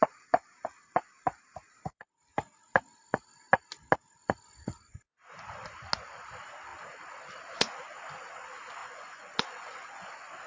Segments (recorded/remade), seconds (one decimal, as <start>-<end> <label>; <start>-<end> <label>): 0.0-8.8 recorded; 8.8-10.1 remade; 10.1-10.5 recorded